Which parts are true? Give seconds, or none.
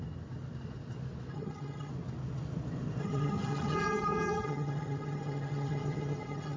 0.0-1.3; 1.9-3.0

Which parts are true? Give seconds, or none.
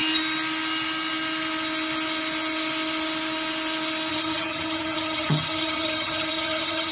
0.0-4.1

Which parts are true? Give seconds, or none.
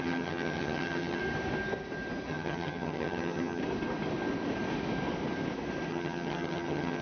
1.2-2.3; 3.6-5.9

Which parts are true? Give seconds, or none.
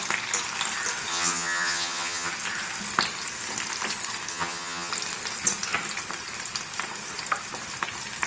0.0-1.1; 2.3-4.3; 4.9-8.3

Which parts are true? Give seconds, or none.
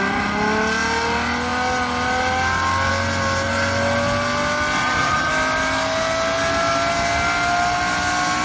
0.0-4.8; 5.3-8.4